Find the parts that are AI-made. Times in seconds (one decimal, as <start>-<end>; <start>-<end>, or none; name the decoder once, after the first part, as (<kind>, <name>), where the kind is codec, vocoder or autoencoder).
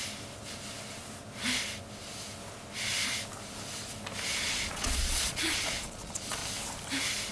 4.4-6.4 (vocoder, Vocos)